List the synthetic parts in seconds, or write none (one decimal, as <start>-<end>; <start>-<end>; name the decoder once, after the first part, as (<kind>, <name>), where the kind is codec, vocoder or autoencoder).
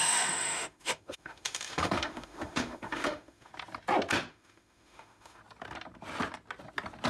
0.0-3.5 (autoencoder, DAC-VAE); 4.3-5.4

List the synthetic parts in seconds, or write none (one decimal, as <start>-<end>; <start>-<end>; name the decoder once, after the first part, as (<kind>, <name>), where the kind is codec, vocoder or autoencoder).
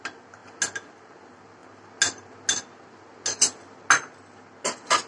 none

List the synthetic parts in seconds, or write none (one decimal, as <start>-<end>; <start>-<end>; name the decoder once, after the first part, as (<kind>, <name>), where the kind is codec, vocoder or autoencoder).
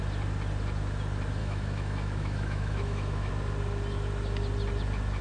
1.4-3.3 (autoencoder, DAC-VAE)